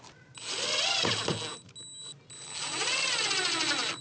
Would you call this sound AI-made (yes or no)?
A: no